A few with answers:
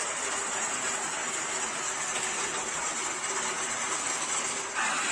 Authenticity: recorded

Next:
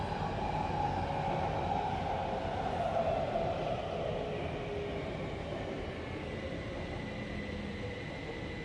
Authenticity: recorded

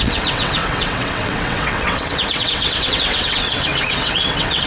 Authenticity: remade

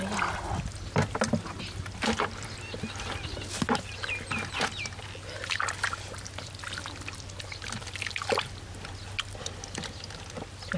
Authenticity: recorded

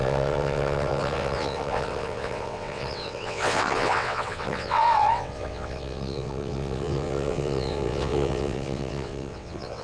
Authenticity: remade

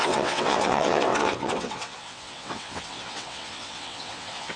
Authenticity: remade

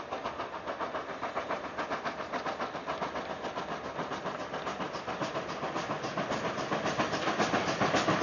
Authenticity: recorded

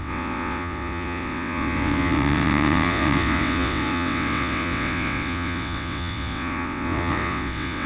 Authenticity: remade